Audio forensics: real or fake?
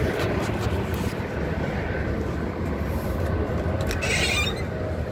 real